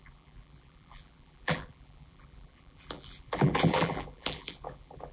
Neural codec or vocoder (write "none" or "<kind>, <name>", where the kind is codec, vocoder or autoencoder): vocoder, BigVGAN v2